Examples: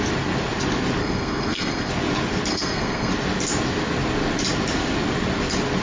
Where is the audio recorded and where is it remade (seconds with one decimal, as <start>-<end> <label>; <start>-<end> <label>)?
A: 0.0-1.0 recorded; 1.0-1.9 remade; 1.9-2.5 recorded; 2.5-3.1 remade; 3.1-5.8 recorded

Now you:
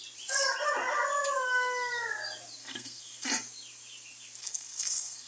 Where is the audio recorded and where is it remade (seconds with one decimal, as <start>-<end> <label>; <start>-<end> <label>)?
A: 0.0-2.6 recorded; 2.6-3.3 remade; 3.3-4.4 recorded; 4.4-5.3 remade

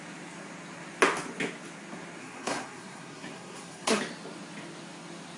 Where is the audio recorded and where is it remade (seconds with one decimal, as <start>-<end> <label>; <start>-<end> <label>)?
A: 0.0-2.2 recorded; 2.2-4.0 remade; 4.0-5.4 recorded